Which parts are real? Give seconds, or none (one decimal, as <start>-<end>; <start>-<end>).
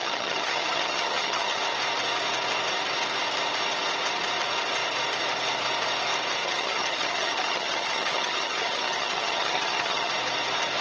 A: 1.6-6.4; 10.1-10.8